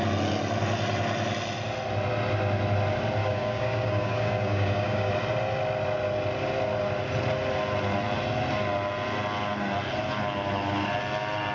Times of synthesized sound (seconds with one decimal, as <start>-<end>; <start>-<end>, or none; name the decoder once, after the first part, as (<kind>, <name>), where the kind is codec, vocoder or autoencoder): 3.2-5.1 (codec, DAC)